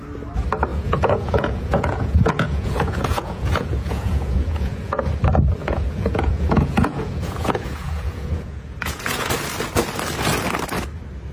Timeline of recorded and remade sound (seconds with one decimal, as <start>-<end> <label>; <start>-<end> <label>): 0.0-0.7 recorded; 0.7-5.0 remade; 5.0-5.6 recorded; 5.6-9.3 remade; 9.3-11.3 recorded